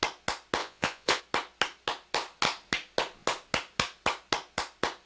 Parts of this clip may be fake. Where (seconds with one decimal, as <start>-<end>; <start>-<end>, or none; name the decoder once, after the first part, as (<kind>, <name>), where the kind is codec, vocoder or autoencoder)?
0.6-1.2 (vocoder, Vocos)